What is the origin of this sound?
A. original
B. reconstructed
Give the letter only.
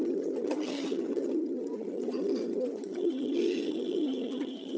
B